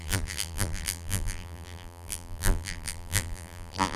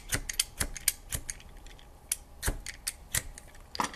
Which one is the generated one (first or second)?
first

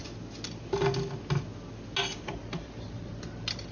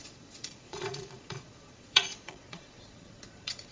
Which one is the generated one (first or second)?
second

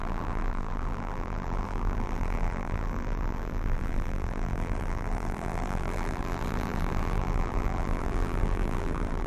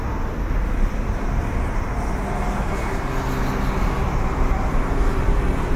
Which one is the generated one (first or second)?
first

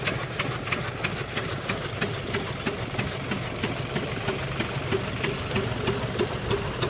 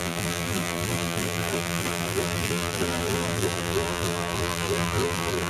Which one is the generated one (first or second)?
second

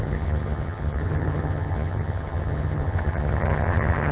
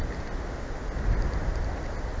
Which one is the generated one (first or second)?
first